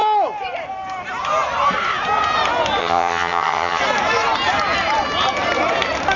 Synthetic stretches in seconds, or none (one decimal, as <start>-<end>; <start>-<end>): 2.8-3.8